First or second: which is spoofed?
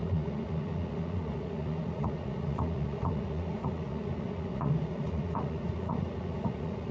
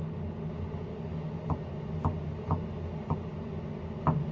first